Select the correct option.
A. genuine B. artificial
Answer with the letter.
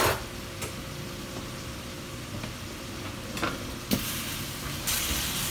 A